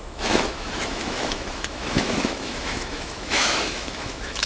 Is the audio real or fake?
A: fake